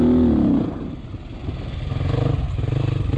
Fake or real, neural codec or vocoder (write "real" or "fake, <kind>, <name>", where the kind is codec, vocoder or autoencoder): real